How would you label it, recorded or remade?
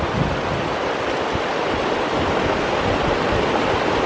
recorded